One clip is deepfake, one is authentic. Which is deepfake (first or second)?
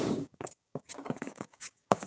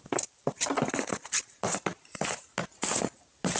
first